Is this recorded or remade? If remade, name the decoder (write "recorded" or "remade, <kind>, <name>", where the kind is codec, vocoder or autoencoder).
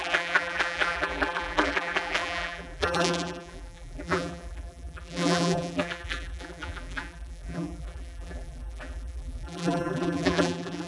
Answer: remade, vocoder, BigVGAN v2